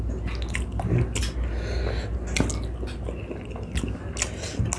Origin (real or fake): real